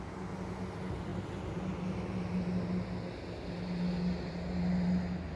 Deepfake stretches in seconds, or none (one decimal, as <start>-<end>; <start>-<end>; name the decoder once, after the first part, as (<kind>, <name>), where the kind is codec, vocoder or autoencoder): none